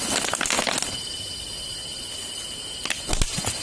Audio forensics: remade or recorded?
recorded